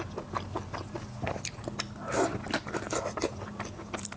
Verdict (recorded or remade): recorded